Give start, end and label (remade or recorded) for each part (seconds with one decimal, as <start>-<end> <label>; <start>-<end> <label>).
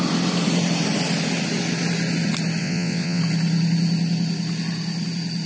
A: 0.0-2.6 recorded; 2.6-3.2 remade; 3.2-5.5 recorded